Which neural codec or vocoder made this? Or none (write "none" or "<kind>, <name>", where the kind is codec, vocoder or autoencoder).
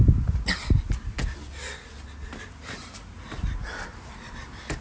none